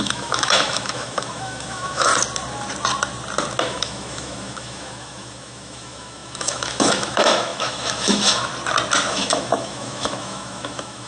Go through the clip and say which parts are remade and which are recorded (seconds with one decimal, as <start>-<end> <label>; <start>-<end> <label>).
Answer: 0.0-2.1 remade; 2.1-3.6 recorded; 3.6-8.5 remade; 8.5-9.1 recorded; 9.1-11.1 remade